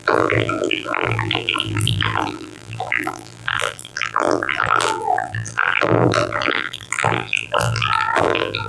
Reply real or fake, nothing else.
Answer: fake